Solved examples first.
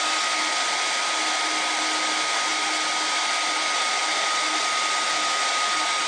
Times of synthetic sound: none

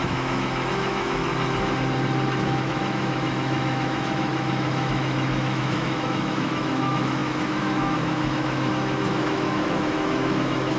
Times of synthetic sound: 0.0-1.3 (autoencoder, DAC-VAE); 2.4-10.8

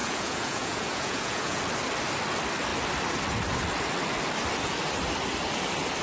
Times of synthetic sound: 0.0-1.6 (vocoder, Vocos)

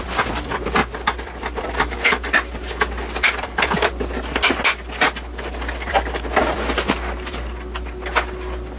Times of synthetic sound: none